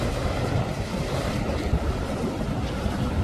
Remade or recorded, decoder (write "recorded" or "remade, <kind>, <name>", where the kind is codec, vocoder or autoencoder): remade, vocoder, BigVGAN v2